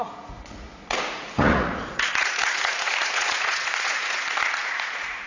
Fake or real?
fake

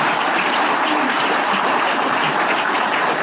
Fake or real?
real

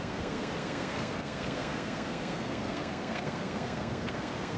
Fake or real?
fake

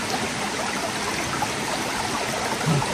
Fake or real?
real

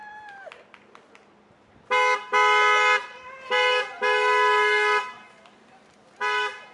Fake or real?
real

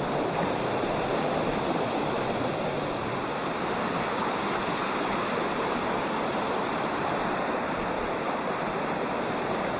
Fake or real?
real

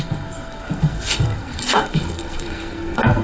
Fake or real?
fake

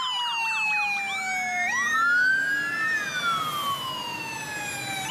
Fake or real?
real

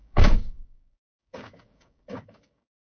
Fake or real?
fake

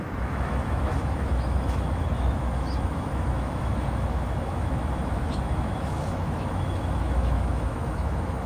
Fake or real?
fake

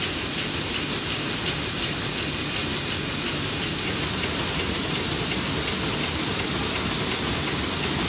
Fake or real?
real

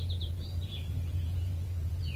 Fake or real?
fake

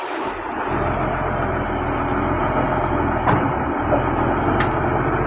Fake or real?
real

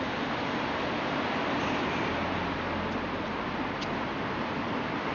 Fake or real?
real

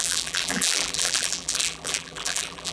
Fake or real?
fake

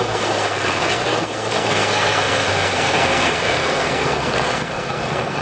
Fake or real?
fake